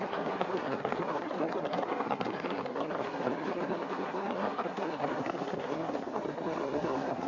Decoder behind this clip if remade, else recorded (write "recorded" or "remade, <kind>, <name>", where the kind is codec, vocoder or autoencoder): remade, codec, SNAC